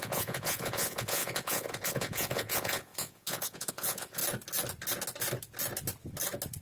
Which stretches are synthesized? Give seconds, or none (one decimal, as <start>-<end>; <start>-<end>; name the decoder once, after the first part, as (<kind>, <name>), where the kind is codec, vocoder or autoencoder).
0.0-4.2 (vocoder, Vocos)